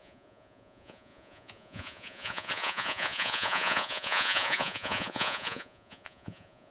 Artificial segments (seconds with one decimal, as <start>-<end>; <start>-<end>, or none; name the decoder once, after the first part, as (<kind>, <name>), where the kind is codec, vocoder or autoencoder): 0.0-6.7 (vocoder, Vocos)